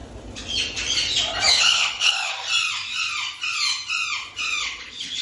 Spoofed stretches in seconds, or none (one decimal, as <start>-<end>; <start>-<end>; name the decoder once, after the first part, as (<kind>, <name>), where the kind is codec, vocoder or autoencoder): 1.5-2.3 (codec, HILCodec); 4.6-5.2